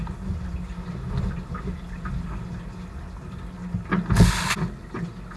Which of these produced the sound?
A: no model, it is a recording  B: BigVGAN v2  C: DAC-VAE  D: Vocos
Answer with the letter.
A